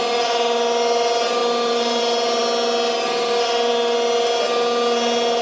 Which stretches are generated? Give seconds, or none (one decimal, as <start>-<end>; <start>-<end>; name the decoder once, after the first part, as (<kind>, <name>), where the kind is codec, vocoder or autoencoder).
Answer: 1.4-2.0 (vocoder, BigVGAN v2)